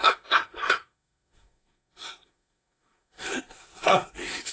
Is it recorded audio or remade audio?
remade